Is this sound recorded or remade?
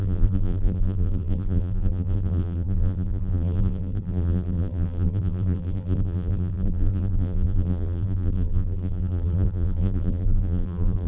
remade